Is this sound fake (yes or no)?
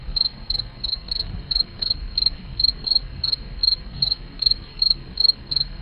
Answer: yes